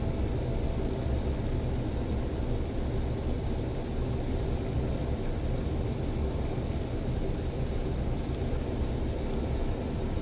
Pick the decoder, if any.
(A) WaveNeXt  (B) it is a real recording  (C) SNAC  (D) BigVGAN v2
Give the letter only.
B